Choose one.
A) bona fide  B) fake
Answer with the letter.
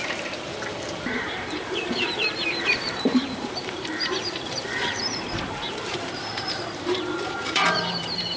B